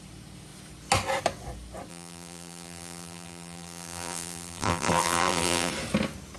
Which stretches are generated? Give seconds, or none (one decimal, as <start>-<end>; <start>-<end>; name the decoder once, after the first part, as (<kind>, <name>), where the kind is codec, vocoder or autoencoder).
1.9-5.7 (vocoder, BigVGAN v2)